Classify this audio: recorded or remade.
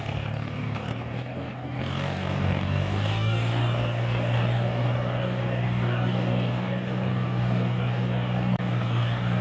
remade